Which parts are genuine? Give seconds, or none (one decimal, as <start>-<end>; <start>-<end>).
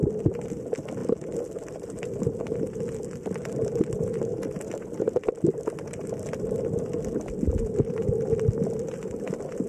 0.0-9.7